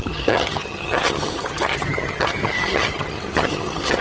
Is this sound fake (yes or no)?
yes